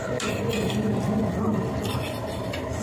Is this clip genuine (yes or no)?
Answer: yes